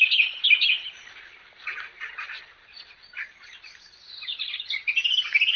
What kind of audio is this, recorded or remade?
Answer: recorded